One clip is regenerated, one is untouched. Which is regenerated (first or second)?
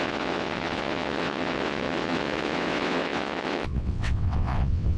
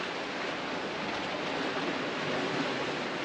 first